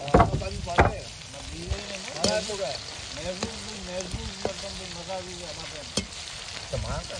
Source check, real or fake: real